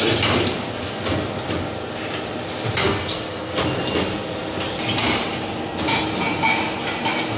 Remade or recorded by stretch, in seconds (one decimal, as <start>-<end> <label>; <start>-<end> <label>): 0.0-2.8 recorded; 2.8-3.5 remade; 3.5-7.4 recorded